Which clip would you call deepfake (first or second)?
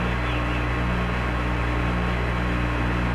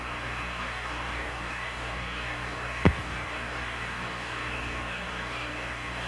second